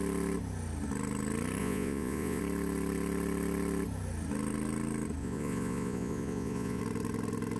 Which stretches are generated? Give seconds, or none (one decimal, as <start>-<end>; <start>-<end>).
1.6-2.4; 5.2-6.8